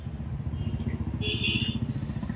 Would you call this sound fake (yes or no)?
no